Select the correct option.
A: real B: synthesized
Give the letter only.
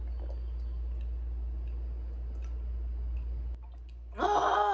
A